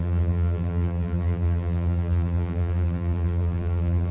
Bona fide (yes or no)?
no